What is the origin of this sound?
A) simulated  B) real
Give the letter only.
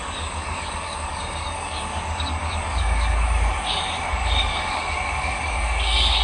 A